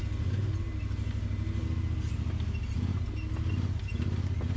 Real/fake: real